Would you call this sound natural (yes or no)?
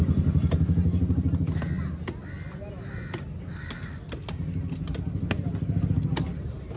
yes